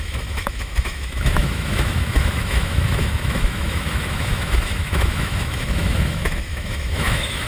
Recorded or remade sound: remade